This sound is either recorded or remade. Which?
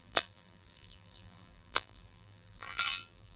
remade